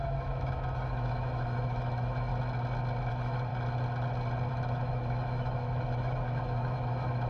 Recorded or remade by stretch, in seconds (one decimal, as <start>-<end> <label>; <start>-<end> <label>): 0.0-2.3 remade; 2.3-3.1 recorded; 3.1-3.5 remade; 3.5-4.5 recorded; 4.5-7.3 remade